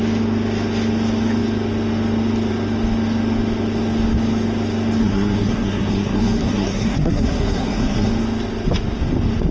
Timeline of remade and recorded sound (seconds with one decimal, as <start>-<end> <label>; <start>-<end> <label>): 0.0-5.0 recorded; 5.0-8.1 remade; 8.1-9.5 recorded